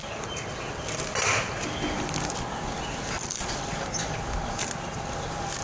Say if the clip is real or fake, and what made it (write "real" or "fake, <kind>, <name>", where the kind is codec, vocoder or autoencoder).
real